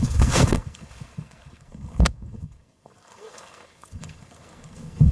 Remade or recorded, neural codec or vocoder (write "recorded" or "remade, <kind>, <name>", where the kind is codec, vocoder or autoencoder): remade, codec, SNAC